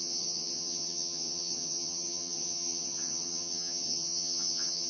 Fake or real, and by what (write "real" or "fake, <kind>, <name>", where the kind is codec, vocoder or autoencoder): fake, vocoder, HiFi-GAN